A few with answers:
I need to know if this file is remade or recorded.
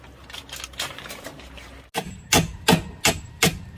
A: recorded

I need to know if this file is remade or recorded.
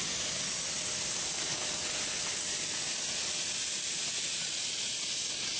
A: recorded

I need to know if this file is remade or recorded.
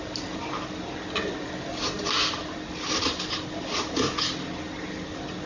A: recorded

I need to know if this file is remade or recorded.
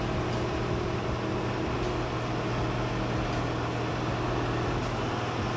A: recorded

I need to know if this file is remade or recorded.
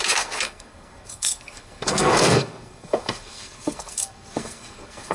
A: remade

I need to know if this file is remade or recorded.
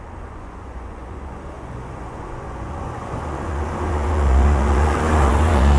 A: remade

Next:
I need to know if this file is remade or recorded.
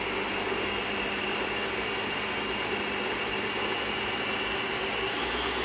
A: recorded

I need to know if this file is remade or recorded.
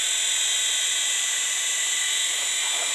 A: remade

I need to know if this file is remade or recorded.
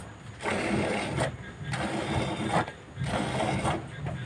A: recorded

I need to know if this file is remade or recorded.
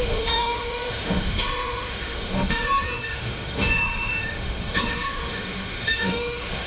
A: remade